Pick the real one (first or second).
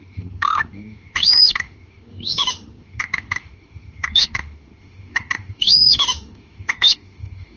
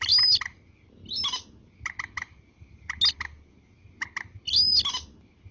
second